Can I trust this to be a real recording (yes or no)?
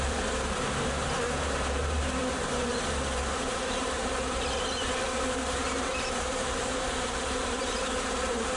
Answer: no